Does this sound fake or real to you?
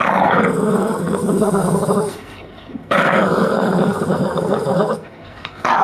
fake